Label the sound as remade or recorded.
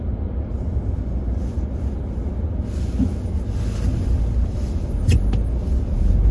recorded